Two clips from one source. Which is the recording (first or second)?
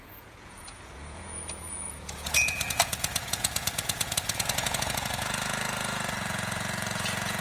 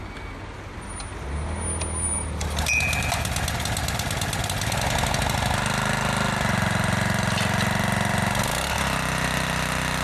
second